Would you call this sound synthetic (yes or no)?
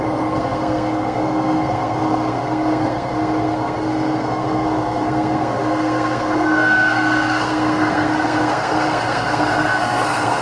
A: yes